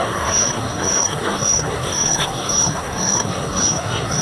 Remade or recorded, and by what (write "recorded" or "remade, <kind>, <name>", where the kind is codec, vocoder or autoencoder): remade, codec, SNAC